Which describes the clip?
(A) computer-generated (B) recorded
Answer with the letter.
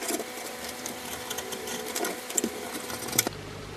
B